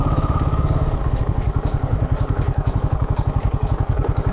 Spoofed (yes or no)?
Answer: yes